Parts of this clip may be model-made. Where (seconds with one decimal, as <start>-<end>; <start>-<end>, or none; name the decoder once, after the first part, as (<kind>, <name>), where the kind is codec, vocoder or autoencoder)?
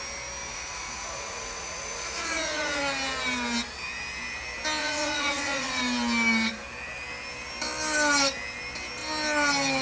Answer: 0.5-2.8 (vocoder, Vocos); 4.8-5.8